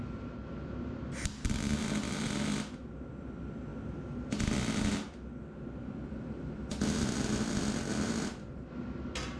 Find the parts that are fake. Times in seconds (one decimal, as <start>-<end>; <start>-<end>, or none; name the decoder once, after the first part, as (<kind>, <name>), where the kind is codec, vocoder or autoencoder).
none